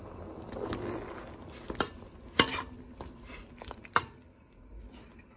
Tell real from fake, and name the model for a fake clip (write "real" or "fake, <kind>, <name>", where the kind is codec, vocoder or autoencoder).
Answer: real